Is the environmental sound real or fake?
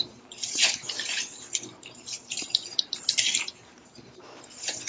fake